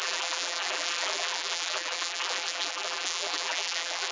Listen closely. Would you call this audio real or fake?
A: fake